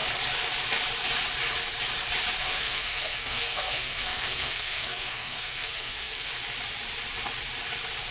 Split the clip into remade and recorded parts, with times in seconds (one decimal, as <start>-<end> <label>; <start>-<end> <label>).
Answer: 0.0-2.4 recorded; 2.4-6.3 remade; 6.3-8.1 recorded